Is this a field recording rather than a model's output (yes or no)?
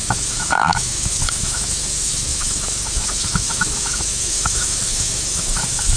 no